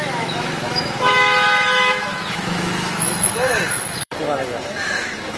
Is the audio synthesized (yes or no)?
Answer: yes